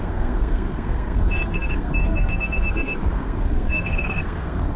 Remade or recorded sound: remade